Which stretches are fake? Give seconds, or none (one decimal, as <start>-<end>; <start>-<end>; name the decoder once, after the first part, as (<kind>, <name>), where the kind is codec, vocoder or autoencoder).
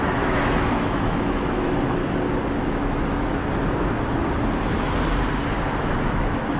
0.0-2.0 (autoencoder, DAC-VAE); 2.6-3.4; 5.8-6.6